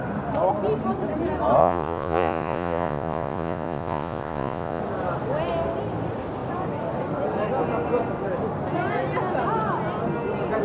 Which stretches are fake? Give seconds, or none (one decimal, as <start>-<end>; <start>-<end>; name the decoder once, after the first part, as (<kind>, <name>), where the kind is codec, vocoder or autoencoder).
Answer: 1.6-4.8 (vocoder, Vocos)